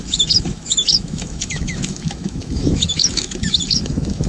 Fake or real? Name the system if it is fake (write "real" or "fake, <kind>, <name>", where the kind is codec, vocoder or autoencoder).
fake, autoencoder, DAC-VAE